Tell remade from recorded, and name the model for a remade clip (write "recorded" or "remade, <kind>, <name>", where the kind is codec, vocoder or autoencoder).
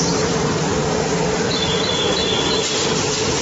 recorded